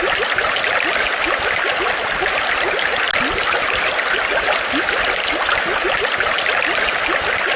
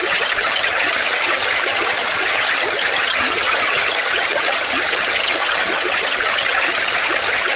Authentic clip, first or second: first